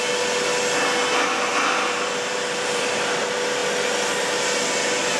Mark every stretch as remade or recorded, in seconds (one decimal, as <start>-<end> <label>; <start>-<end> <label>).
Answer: 0.0-1.5 recorded; 1.5-3.2 remade; 3.2-5.2 recorded